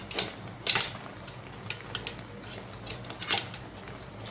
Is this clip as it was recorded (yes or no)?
yes